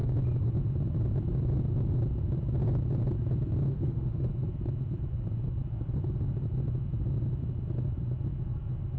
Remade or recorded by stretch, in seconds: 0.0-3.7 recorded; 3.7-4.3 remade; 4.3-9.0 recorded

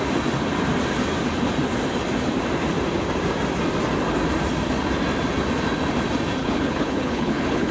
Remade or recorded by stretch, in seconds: 0.0-6.4 recorded; 6.4-7.7 remade

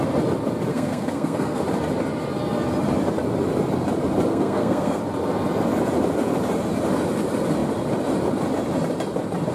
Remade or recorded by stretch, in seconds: 0.0-0.7 recorded; 0.7-1.6 remade; 1.6-4.3 recorded; 4.3-5.0 remade; 5.0-9.5 recorded